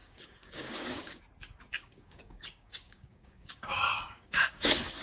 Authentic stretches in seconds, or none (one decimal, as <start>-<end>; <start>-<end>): 1.2-1.7